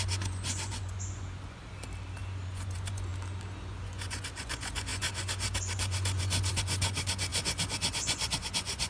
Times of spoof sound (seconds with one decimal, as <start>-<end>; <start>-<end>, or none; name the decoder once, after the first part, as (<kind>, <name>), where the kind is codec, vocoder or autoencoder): 0.0-1.6 (vocoder, Vocos); 2.2-3.1; 3.6-8.9